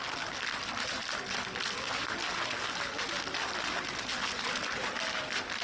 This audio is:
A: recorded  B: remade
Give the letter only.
A